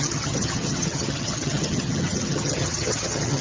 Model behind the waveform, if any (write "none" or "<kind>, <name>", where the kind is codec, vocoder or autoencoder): vocoder, HiFi-GAN